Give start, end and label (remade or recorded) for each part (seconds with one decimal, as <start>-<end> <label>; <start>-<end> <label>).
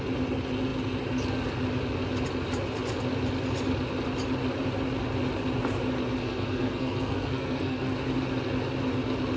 0.0-6.2 recorded; 6.2-7.9 remade; 7.9-9.4 recorded